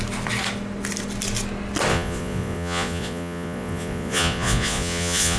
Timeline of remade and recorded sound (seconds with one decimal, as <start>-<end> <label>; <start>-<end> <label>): 0.0-1.9 recorded; 1.9-5.4 remade

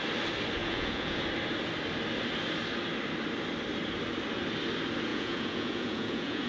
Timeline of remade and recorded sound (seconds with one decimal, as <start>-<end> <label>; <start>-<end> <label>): 0.0-0.6 recorded; 0.6-1.2 remade; 1.2-5.1 recorded; 5.1-6.5 remade

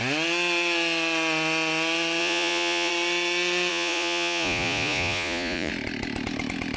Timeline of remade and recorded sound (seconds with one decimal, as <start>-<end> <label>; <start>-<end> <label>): 0.0-2.2 recorded; 2.2-2.9 remade; 2.9-3.7 recorded; 3.7-5.7 remade; 5.7-6.8 recorded

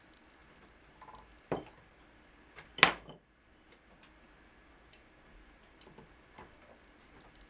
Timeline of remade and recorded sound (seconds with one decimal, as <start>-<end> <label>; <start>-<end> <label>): 0.0-7.5 recorded

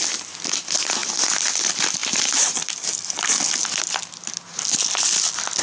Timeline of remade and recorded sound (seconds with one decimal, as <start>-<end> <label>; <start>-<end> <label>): 0.0-5.6 recorded